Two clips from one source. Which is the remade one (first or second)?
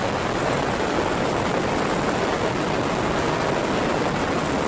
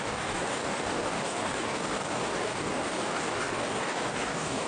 second